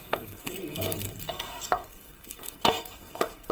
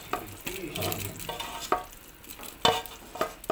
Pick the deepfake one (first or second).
first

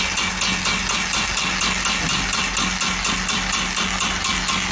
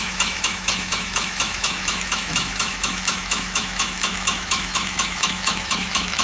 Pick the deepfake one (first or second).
second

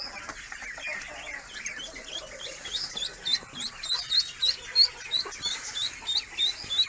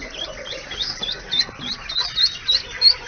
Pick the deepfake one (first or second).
second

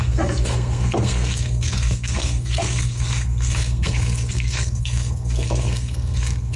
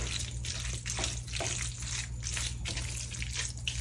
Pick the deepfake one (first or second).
first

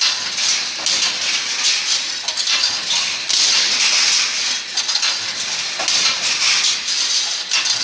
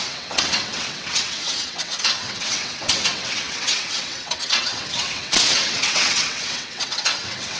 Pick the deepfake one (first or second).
second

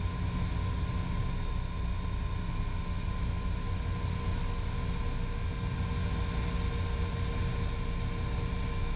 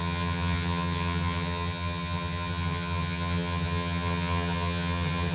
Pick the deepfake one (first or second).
second